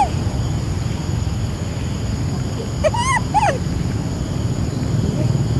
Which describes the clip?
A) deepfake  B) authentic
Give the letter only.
B